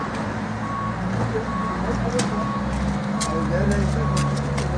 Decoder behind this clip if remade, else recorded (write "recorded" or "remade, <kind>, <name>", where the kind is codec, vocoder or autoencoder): recorded